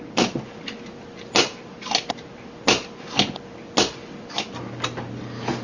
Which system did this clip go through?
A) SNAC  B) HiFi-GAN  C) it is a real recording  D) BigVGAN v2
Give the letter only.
C